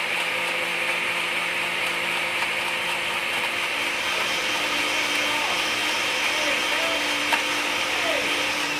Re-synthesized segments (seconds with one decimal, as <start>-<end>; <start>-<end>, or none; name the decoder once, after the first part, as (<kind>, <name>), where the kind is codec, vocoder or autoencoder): none